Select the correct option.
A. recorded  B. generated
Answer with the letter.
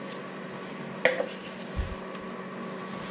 A